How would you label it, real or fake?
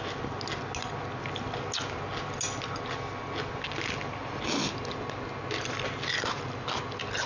real